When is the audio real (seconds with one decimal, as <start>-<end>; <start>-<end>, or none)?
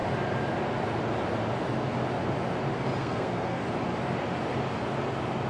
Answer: 0.0-3.0; 3.6-5.5